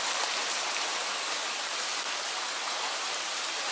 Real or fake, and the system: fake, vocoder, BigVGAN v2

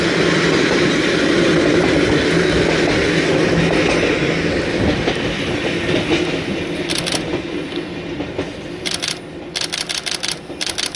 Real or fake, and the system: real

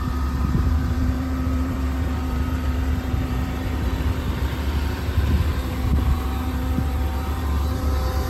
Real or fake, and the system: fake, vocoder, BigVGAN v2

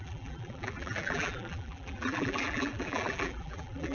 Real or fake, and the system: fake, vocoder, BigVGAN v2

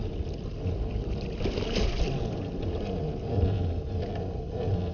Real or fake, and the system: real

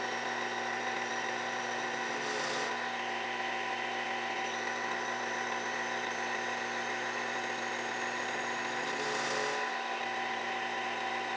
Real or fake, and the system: real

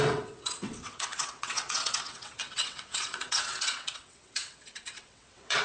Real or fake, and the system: fake, vocoder, WaveNeXt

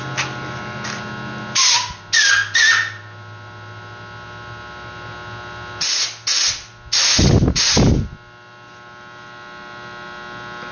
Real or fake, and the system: real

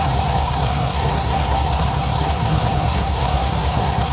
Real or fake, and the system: fake, codec, SNAC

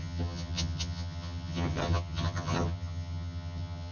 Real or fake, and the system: fake, vocoder, HiFi-GAN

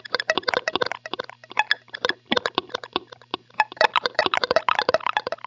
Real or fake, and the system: fake, vocoder, BigVGAN v2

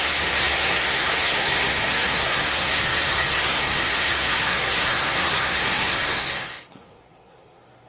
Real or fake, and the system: fake, codec, SNAC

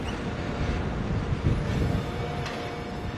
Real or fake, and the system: real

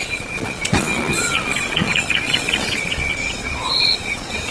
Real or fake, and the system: fake, vocoder, Vocos